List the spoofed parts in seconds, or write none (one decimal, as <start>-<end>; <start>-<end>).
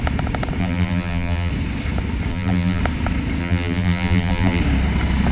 0.6-1.5; 2.3-2.8; 3.4-4.6